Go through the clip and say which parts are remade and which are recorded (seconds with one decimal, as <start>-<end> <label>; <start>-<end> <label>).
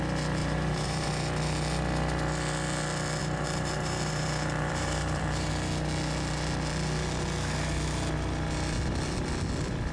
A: 0.0-0.4 recorded; 0.4-1.1 remade; 1.1-3.2 recorded; 3.2-5.5 remade; 5.5-9.9 recorded